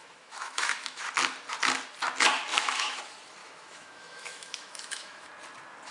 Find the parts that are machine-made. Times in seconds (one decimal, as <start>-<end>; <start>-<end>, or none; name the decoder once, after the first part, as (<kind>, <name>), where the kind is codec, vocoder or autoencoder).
0.0-1.0 (autoencoder, DAC-VAE); 2.5-3.0; 3.4-5.3